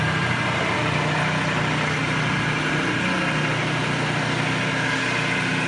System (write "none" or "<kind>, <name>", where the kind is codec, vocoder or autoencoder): none